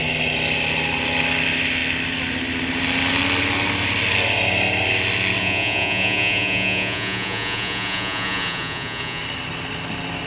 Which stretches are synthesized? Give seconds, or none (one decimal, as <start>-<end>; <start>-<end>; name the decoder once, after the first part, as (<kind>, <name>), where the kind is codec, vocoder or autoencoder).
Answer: 5.4-9.2 (vocoder, Vocos)